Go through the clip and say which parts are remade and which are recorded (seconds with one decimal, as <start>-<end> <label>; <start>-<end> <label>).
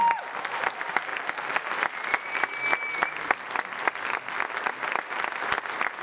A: 0.0-6.0 recorded